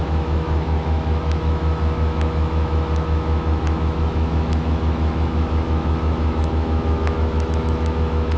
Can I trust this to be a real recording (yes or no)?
no